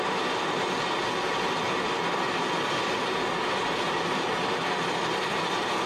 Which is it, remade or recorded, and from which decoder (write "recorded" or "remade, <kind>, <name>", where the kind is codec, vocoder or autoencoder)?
recorded